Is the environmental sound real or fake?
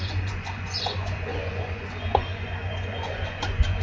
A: fake